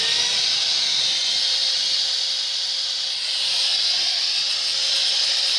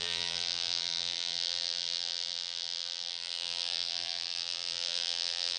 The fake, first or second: second